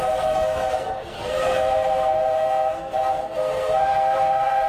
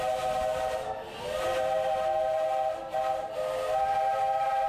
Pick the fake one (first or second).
first